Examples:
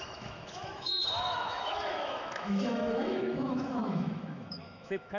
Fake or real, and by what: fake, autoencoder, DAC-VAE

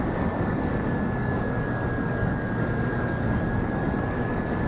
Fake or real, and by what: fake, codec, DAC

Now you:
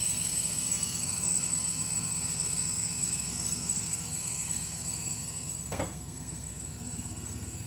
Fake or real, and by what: fake, codec, SNAC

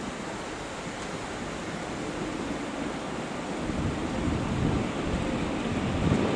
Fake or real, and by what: real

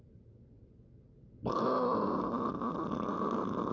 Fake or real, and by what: real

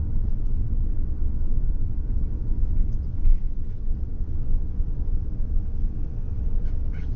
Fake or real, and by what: fake, vocoder, WaveNeXt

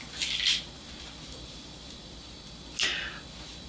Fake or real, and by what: real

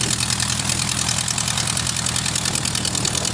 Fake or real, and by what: real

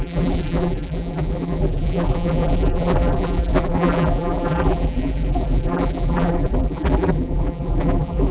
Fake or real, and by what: fake, vocoder, BigVGAN v2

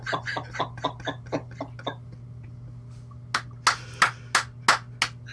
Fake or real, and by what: real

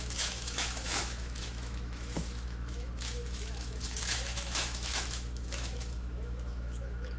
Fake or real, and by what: fake, autoencoder, DAC-VAE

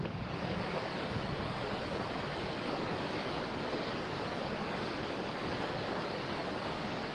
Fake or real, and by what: fake, codec, DAC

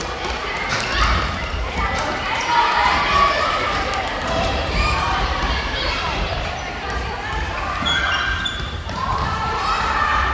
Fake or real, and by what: fake, vocoder, BigVGAN v2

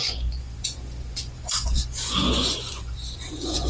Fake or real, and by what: fake, vocoder, Vocos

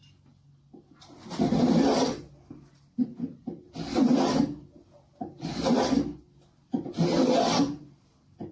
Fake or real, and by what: real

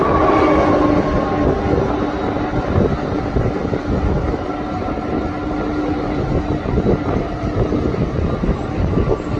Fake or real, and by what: real